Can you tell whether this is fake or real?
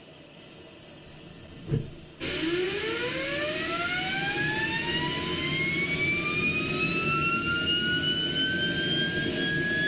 real